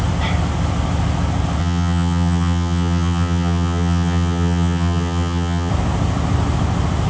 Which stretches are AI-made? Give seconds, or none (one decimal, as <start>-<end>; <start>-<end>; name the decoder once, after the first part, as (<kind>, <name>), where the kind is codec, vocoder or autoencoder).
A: 1.6-5.7 (vocoder, HiFi-GAN)